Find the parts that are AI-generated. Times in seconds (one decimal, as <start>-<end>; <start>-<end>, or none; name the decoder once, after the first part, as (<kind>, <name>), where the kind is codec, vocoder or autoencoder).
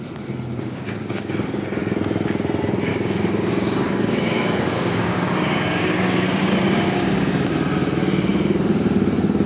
0.5-1.6 (codec, DAC); 2.9-7.3